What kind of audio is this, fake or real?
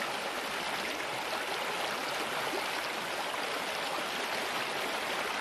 real